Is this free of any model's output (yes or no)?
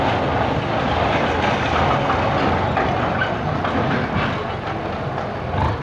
yes